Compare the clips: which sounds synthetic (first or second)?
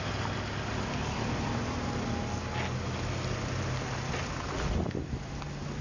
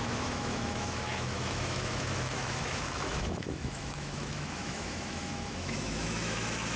second